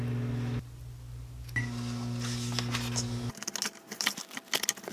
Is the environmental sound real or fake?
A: real